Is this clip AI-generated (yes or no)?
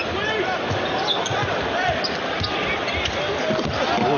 no